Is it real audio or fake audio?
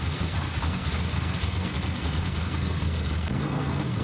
fake